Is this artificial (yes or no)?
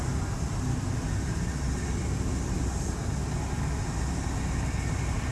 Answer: no